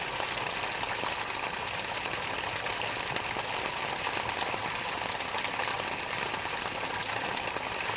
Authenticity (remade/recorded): recorded